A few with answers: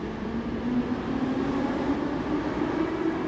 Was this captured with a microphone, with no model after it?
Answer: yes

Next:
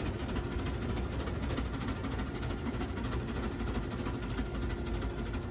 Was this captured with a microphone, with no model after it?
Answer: yes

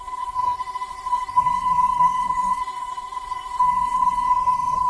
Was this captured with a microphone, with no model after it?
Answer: no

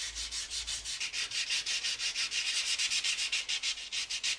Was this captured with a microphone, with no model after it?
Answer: yes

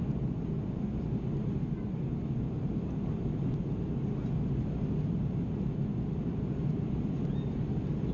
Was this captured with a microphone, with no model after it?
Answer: yes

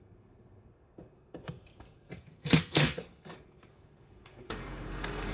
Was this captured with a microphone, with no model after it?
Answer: no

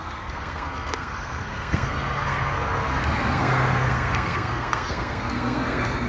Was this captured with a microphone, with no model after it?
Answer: no